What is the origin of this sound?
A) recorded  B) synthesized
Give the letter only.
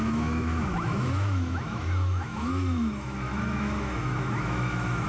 B